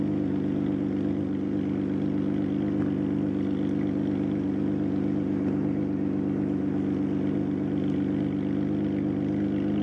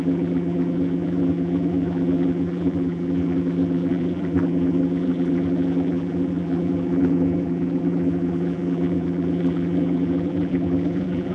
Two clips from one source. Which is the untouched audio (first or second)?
first